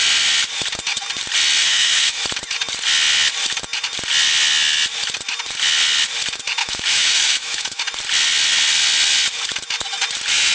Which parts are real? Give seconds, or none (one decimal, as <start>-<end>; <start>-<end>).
0.0-1.6; 2.2-6.6; 7.8-10.5

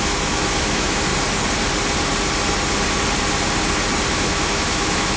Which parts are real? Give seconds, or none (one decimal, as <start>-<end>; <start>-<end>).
1.1-4.1

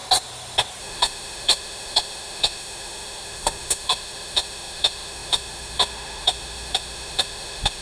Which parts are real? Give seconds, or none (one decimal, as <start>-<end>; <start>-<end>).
0.0-0.8

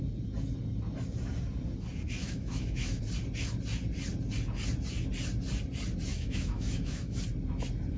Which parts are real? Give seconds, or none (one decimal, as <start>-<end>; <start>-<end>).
0.0-2.2; 3.0-6.1; 7.2-8.0

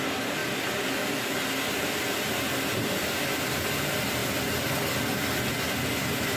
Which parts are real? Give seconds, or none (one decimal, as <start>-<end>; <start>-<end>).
0.0-6.4

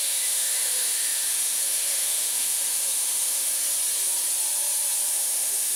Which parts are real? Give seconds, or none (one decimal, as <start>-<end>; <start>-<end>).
3.6-5.1

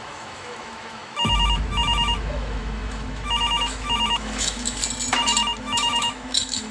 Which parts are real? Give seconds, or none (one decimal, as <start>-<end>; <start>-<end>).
4.8-5.6